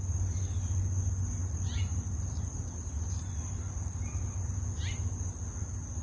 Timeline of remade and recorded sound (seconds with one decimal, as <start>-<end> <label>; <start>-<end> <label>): 0.0-6.0 recorded